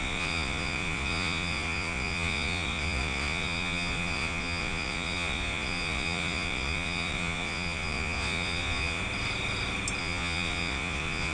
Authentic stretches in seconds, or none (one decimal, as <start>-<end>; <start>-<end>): 9.0-10.0